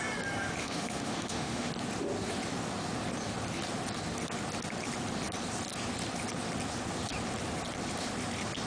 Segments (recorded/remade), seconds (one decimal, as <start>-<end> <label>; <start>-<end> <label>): 0.0-0.6 recorded; 0.6-1.7 remade; 1.7-8.7 recorded